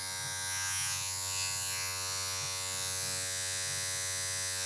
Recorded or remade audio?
remade